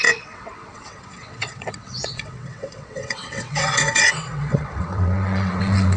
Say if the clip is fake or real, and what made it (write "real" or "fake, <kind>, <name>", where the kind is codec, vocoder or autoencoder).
fake, vocoder, WaveNeXt